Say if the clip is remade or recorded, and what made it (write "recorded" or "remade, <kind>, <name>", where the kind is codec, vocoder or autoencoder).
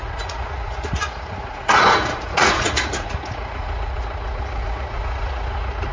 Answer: remade, vocoder, Vocos